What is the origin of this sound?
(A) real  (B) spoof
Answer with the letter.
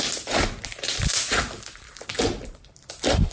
A